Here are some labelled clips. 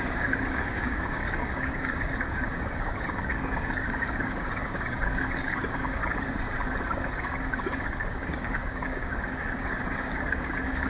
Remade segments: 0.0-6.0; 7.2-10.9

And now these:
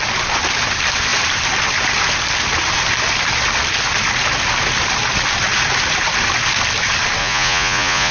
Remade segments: 7.2-8.1

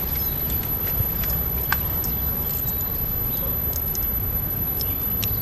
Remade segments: 0.0-5.4

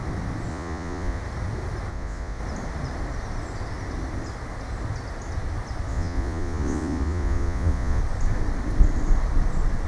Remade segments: 0.5-1.2; 1.9-2.4; 5.9-8.0